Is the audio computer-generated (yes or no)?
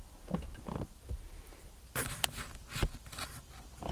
yes